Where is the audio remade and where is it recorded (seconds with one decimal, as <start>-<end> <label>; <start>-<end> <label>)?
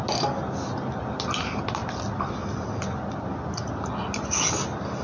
0.0-5.0 recorded